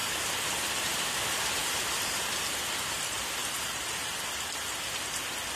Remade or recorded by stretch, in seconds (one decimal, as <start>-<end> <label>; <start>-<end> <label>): 0.0-1.6 recorded; 1.6-2.6 remade; 2.6-3.4 recorded; 3.4-4.1 remade; 4.1-5.6 recorded